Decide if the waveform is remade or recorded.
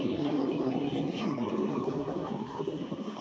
remade